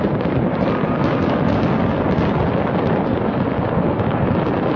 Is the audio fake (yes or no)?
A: no